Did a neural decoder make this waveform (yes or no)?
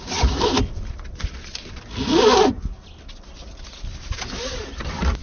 no